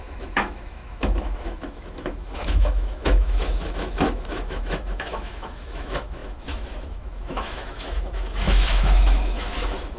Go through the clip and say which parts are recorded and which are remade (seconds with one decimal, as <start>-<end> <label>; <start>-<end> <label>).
0.0-10.0 remade